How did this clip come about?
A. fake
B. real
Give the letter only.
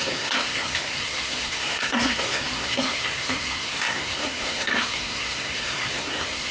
A